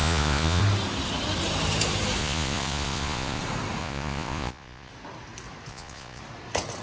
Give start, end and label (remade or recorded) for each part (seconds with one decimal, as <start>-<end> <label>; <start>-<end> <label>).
0.0-0.6 remade; 0.6-2.2 recorded; 2.2-3.4 remade; 3.4-3.8 recorded; 3.8-4.9 remade; 4.9-5.7 recorded; 5.7-6.2 remade; 6.2-6.8 recorded